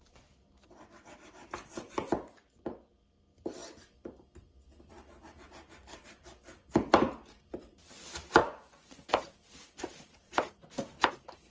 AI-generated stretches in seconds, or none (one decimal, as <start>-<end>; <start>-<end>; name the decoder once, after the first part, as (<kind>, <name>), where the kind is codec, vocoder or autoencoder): 8.4-9.1 (vocoder, Vocos)

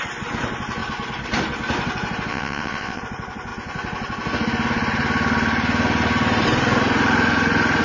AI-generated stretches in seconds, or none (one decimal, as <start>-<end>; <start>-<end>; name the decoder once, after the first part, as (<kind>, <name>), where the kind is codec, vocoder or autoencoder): 2.3-3.0 (vocoder, WaveNeXt)

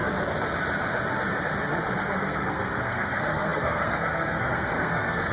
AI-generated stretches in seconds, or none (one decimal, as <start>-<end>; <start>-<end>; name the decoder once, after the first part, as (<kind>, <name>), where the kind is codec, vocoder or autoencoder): 2.2-5.3 (codec, SNAC)

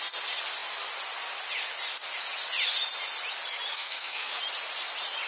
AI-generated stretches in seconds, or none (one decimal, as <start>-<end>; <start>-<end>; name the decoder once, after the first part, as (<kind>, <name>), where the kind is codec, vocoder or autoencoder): 3.7-4.4 (codec, SNAC)

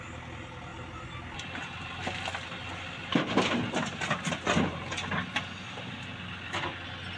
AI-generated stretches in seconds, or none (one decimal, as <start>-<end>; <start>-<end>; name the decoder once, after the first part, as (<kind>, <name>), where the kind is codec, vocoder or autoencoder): none

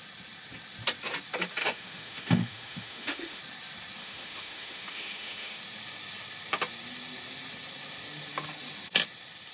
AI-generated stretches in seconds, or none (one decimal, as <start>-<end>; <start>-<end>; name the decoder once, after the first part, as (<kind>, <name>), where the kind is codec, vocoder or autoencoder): 1.6-3.4 (autoencoder, DAC-VAE); 4.0-5.6

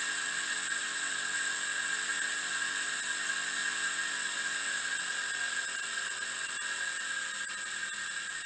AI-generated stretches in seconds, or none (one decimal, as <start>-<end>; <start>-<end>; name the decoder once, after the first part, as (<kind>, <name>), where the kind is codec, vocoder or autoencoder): none

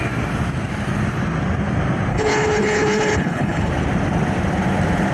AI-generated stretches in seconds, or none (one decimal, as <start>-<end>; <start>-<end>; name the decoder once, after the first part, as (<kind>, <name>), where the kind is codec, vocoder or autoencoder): 2.1-3.7 (codec, HILCodec)